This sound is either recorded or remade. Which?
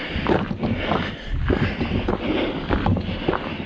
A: recorded